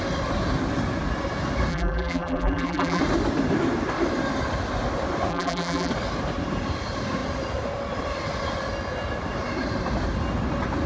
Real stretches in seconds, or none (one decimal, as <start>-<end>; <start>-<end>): 0.0-1.7; 3.0-5.3; 5.9-10.9